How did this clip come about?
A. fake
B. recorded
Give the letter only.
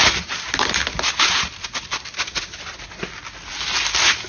B